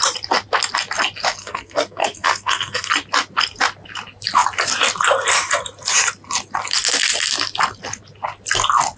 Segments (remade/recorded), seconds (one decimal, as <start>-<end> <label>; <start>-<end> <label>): 0.0-1.4 recorded; 1.4-2.9 remade; 2.9-9.0 recorded